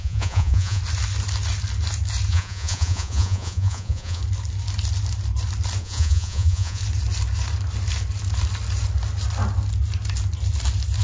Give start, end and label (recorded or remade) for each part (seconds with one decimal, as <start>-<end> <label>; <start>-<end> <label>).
0.0-0.8 remade; 0.8-2.3 recorded; 2.3-4.2 remade; 4.2-5.8 recorded; 5.8-6.8 remade; 6.8-11.0 recorded